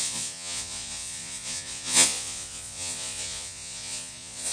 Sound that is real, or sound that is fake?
fake